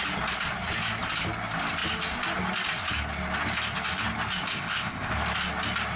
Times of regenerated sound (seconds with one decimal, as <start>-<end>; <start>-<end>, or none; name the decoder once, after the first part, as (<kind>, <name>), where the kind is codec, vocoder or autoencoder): 4.5-5.1 (codec, ZipCodec)